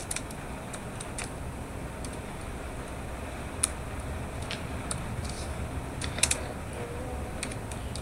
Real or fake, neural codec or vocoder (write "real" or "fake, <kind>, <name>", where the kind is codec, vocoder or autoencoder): real